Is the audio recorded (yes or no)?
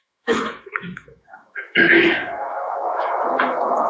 no